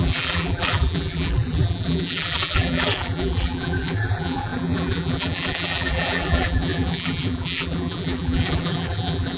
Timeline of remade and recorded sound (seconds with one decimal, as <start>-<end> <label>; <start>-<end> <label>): 0.0-9.4 remade